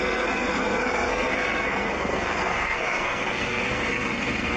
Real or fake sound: fake